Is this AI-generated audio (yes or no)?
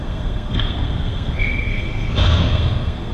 yes